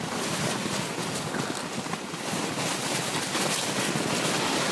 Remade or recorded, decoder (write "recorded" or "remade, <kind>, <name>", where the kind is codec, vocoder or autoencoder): recorded